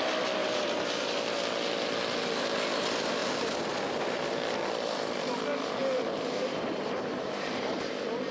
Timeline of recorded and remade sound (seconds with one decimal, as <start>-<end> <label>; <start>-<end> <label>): 0.0-0.4 recorded; 0.4-1.2 remade; 1.2-5.8 recorded; 5.8-7.9 remade; 7.9-8.3 recorded